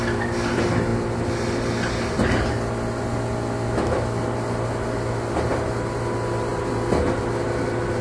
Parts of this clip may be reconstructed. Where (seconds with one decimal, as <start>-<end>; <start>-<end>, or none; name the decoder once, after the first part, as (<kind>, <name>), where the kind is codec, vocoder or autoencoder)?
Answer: none